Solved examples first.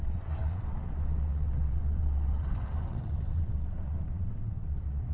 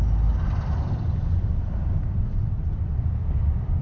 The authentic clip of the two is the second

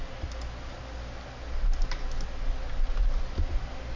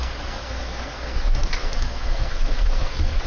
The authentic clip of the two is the first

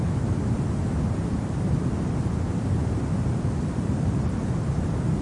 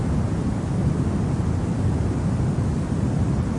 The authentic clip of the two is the second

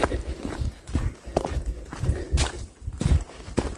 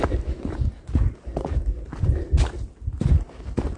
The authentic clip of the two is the second